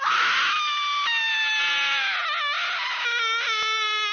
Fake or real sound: real